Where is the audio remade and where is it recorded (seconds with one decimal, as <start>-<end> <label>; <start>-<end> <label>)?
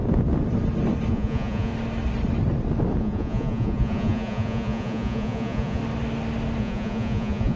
0.0-1.1 recorded; 1.1-1.7 remade; 1.7-3.0 recorded; 3.0-5.8 remade; 5.8-6.6 recorded; 6.6-7.6 remade